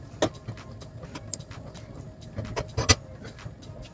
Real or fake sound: real